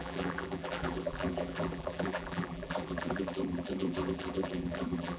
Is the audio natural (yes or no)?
no